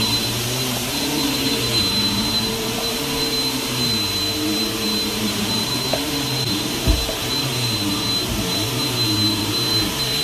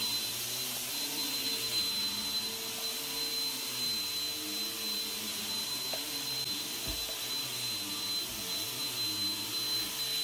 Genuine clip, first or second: second